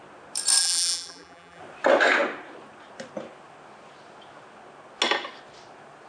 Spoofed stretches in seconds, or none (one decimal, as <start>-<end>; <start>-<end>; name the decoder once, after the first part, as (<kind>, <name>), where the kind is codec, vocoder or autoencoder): 0.6-1.6 (vocoder, BigVGAN v2)